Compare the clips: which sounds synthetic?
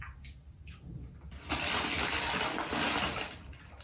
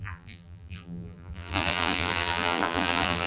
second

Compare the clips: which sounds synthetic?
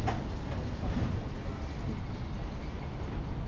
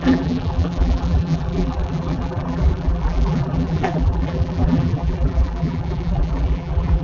second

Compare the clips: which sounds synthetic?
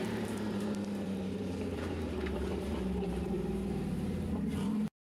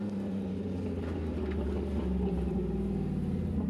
first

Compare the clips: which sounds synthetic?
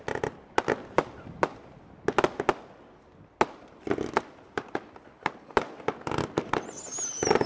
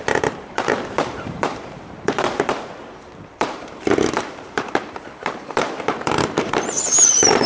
second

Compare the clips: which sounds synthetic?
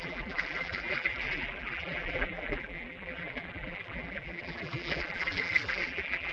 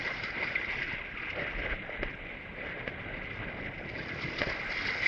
first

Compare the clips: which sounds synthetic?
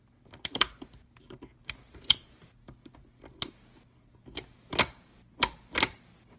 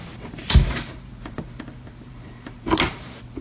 second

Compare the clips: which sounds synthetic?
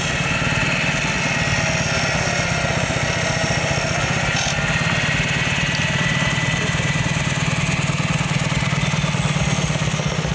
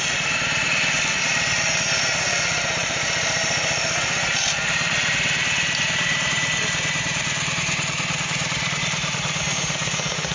second